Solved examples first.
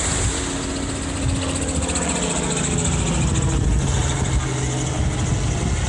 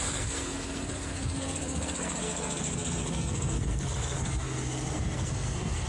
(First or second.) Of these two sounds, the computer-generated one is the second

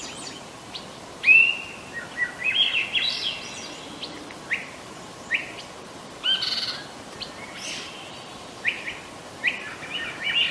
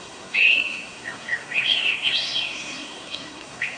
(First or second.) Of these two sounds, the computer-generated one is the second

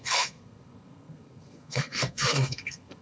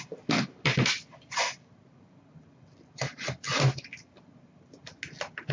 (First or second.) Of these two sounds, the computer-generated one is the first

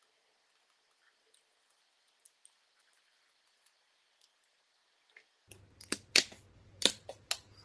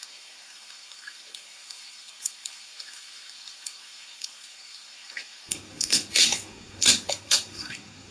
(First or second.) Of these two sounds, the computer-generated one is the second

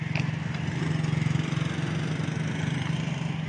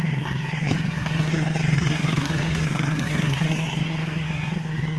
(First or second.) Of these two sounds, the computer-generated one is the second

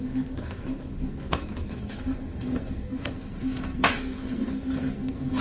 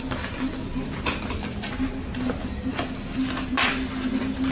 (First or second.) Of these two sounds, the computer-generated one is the first